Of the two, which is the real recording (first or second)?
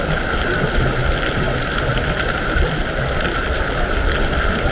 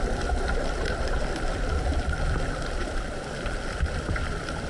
first